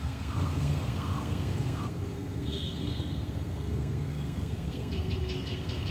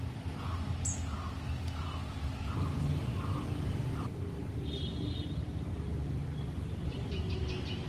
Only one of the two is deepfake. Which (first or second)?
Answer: first